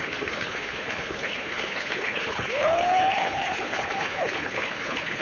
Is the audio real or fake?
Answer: fake